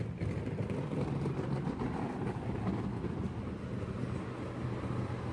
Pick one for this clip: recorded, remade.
recorded